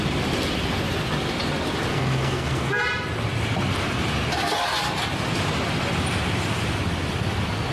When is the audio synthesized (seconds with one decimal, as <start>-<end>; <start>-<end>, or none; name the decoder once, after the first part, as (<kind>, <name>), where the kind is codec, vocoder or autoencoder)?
1.9-2.8 (codec, SNAC)